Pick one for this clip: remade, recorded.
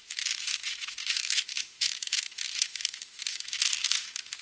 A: remade